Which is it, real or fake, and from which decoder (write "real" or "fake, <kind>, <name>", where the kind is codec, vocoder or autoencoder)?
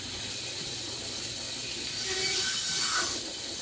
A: fake, vocoder, BigVGAN v2